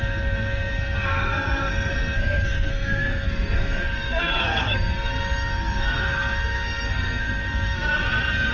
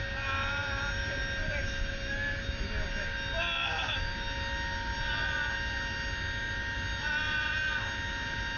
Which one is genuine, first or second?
second